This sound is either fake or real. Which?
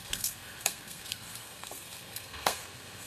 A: fake